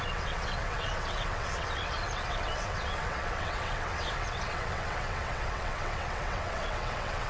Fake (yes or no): yes